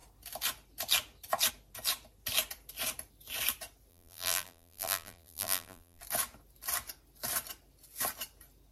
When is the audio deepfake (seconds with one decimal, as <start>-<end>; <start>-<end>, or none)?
3.9-6.0

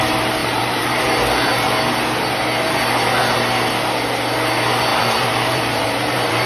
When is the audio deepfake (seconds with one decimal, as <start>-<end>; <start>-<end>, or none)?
0.4-1.0; 4.9-6.5

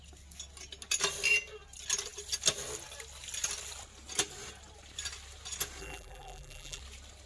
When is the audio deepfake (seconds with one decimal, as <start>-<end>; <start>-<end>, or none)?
5.8-6.8